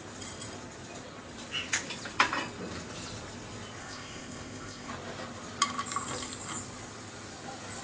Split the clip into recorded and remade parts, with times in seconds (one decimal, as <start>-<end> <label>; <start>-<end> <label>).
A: 0.0-3.8 recorded; 3.8-4.9 remade; 4.9-7.8 recorded